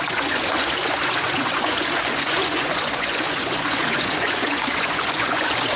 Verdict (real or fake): fake